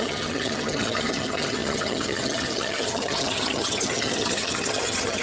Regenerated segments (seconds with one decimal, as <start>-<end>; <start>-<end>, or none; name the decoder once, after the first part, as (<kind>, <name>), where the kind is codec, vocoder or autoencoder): 0.0-5.2 (vocoder, HiFi-GAN)

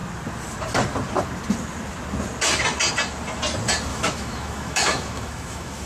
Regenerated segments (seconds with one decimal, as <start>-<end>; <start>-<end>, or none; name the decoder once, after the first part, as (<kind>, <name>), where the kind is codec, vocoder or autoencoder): 3.9-5.9 (autoencoder, DAC-VAE)

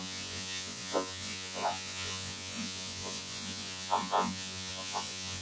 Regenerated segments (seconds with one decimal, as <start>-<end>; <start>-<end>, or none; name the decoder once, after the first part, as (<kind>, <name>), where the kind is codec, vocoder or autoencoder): 0.0-5.4 (vocoder, Vocos)

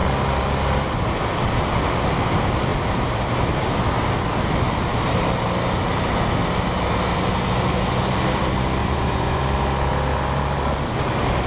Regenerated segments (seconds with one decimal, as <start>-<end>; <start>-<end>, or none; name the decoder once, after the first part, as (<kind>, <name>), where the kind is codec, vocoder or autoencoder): 8.8-9.4 (vocoder, Vocos)